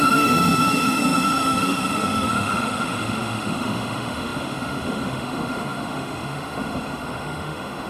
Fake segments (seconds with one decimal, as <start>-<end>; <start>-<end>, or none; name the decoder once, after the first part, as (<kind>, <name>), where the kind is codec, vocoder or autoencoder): 0.0-7.9 (autoencoder, DAC-VAE)